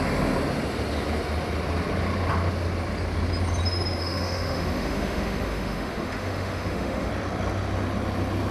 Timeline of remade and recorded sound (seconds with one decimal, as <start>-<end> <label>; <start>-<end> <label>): 0.0-4.0 recorded; 4.0-7.1 remade; 7.1-8.5 recorded